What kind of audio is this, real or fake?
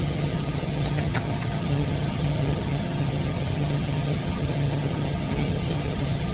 fake